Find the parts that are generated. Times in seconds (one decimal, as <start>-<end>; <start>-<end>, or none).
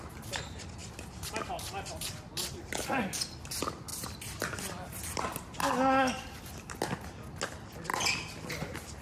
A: none